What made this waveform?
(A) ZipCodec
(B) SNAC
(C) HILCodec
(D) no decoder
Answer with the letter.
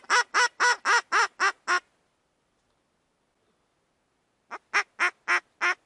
D